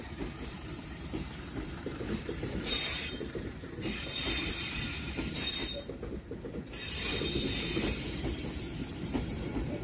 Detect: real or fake fake